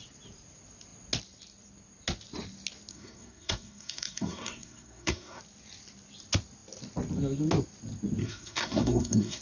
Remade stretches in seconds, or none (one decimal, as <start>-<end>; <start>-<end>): 2.9-5.4; 8.2-9.4